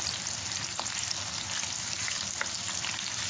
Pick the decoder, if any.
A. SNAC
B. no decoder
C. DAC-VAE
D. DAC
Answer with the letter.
B